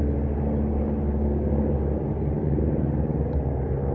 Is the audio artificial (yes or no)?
no